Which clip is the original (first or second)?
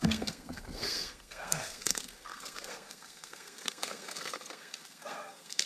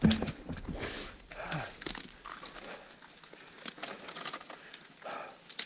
second